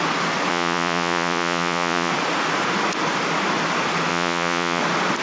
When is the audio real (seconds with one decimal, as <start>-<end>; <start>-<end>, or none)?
0.0-0.5; 2.1-4.1; 4.8-5.2